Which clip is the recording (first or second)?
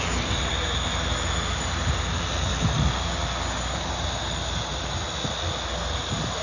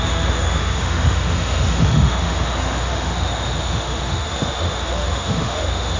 first